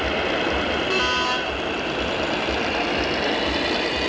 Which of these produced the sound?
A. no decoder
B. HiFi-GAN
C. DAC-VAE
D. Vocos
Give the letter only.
A